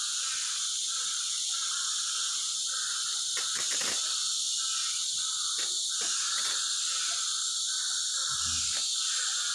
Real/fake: real